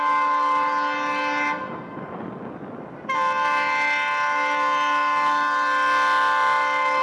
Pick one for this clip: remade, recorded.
recorded